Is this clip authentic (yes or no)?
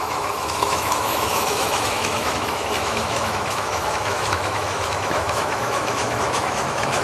no